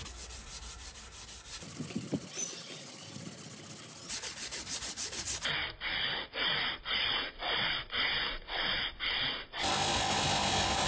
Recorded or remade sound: recorded